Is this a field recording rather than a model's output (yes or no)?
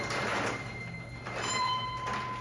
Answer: no